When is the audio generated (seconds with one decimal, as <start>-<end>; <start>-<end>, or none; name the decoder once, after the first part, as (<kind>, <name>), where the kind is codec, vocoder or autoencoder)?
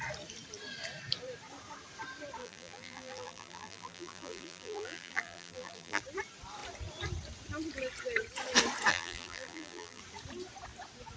2.4-6.0 (vocoder, BigVGAN v2); 8.9-10.0